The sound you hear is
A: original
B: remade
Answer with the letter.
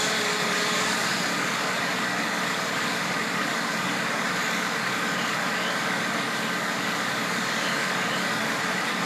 B